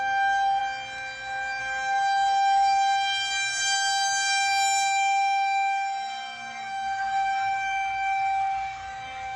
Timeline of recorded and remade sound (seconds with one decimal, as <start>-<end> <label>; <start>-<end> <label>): 0.0-0.6 remade; 0.6-1.6 recorded; 1.6-9.4 remade